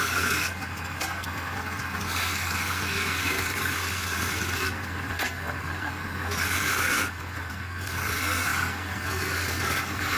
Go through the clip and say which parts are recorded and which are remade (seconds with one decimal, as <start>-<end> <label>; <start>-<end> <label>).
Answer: 0.0-10.2 remade